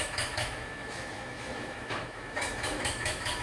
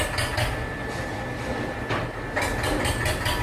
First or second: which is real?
second